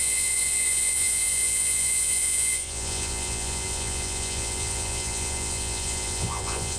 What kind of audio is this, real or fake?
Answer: fake